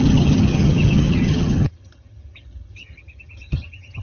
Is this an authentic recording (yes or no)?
no